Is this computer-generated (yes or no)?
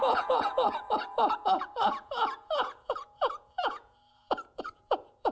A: yes